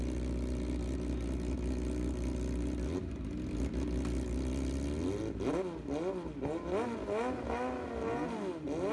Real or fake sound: real